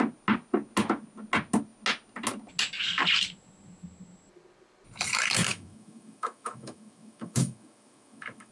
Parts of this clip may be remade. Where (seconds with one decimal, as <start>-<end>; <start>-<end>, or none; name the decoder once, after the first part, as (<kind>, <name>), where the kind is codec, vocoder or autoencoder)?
5.5-8.5 (autoencoder, DAC-VAE)